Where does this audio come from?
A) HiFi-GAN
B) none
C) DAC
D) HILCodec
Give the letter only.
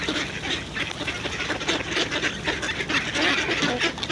B